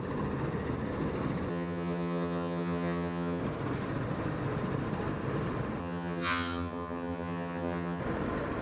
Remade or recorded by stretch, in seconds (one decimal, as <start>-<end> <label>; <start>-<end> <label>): 0.0-1.5 recorded; 1.5-3.4 remade; 3.4-5.8 recorded; 5.8-8.0 remade; 8.0-8.6 recorded